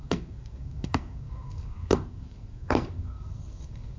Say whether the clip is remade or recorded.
remade